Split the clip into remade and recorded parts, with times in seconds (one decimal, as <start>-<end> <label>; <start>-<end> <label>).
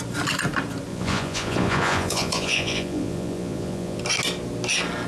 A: 0.0-0.9 recorded; 0.9-4.0 remade; 4.0-5.1 recorded